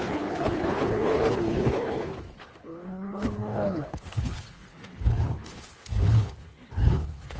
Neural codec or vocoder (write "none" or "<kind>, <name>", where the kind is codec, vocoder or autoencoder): codec, HILCodec